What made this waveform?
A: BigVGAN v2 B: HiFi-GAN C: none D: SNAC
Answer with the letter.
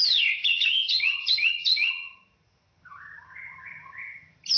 B